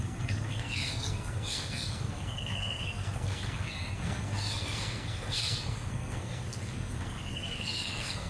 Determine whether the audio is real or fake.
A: fake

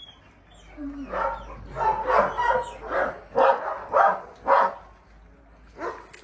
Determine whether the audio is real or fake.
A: real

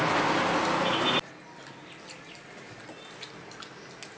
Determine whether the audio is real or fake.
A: real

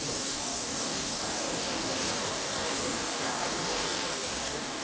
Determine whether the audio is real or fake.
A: fake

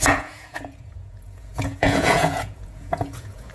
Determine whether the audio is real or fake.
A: fake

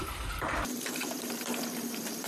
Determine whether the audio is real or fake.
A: fake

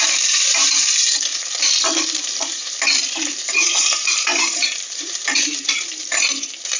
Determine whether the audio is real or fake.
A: fake